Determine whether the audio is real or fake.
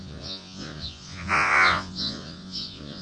fake